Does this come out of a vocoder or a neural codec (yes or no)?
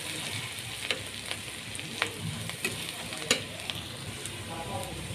no